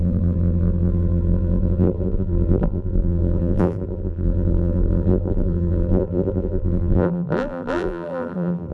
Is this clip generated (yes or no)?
yes